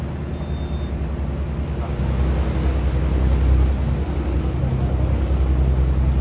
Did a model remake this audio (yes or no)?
no